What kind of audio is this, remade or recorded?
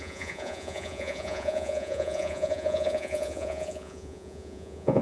remade